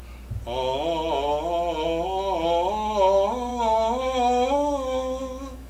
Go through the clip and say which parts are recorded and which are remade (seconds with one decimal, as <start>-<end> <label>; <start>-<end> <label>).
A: 0.0-3.5 recorded; 3.5-5.7 remade